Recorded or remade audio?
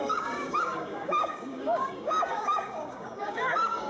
remade